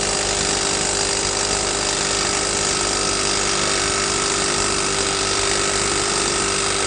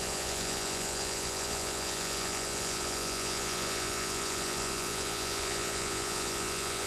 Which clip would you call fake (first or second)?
second